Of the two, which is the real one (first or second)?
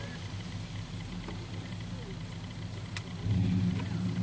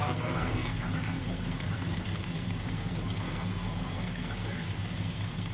first